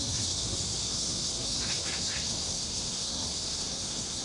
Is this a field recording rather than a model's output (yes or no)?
no